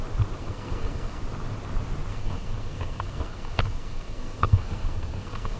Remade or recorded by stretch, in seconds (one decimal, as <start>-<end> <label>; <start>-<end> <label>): 0.0-0.4 recorded; 0.4-1.2 remade; 1.2-2.1 recorded; 2.1-5.6 remade